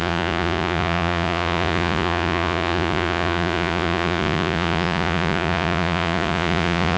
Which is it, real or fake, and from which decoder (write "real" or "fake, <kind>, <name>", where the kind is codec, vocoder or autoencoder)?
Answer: fake, vocoder, Vocos